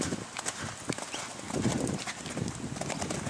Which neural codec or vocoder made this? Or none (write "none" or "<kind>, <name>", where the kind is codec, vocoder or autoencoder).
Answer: none